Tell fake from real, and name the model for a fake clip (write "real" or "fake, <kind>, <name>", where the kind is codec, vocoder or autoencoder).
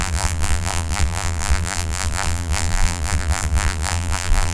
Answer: fake, vocoder, BigVGAN v2